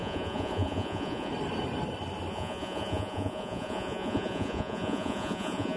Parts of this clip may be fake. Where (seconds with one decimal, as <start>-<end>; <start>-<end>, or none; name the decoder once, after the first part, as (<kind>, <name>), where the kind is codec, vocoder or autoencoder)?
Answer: 0.0-1.3 (vocoder, Vocos); 2.3-5.8